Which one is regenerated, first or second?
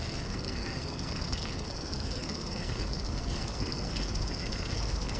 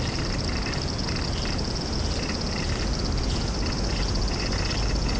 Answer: first